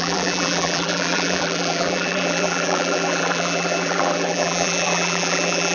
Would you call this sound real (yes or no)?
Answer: no